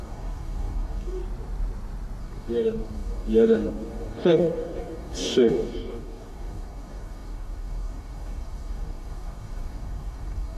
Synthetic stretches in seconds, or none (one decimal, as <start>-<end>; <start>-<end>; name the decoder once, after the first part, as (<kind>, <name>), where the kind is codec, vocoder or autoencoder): 0.0-1.2 (codec, DAC); 2.2-10.6